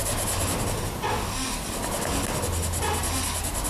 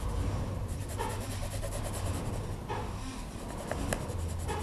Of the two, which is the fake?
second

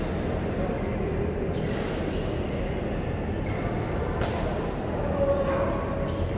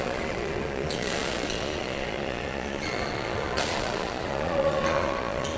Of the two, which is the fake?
second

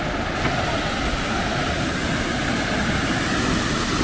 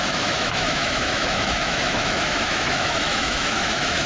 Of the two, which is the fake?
second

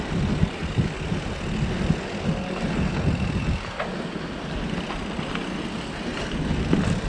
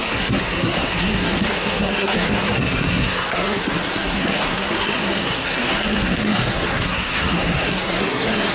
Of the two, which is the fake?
second